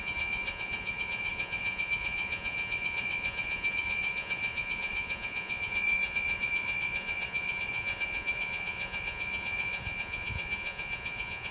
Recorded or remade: remade